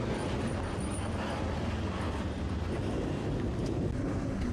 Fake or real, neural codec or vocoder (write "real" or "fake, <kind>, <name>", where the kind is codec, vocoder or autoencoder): real